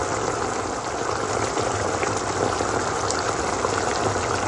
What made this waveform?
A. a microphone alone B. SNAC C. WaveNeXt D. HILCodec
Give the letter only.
A